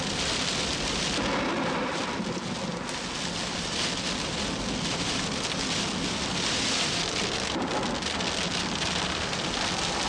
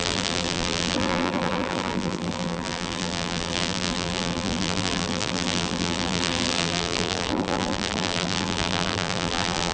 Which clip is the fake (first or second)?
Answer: second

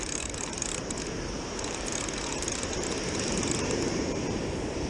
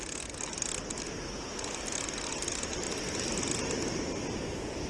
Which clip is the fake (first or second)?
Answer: first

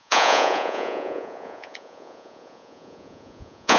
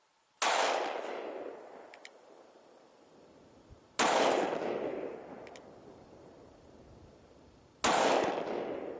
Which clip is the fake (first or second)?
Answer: first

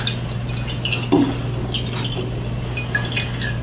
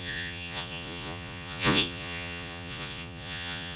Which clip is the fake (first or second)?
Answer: second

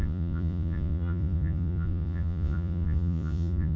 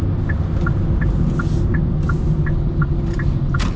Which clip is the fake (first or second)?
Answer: first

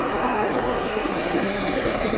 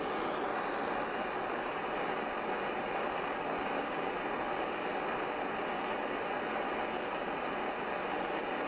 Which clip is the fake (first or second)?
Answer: first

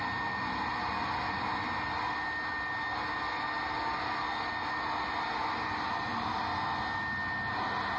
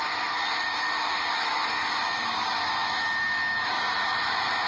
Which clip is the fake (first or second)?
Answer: second